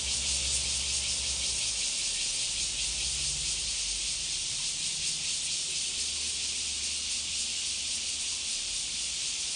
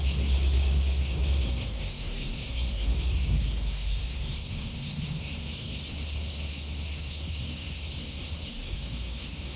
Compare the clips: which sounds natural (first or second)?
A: first